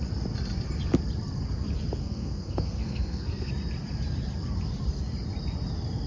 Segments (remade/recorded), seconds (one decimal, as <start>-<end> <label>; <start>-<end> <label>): 0.0-2.0 recorded; 2.0-3.5 remade; 3.5-6.1 recorded